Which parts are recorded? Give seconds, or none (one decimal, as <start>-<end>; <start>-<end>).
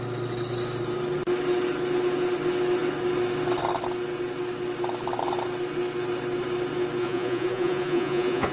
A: 0.0-7.0